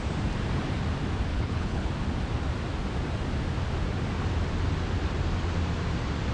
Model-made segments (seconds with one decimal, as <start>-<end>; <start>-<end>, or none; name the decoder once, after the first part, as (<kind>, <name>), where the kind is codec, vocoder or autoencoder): 1.3-1.9 (codec, HILCodec)

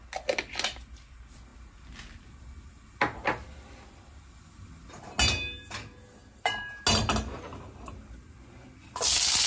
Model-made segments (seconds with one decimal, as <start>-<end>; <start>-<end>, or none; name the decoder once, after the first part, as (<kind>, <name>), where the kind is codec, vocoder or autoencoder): none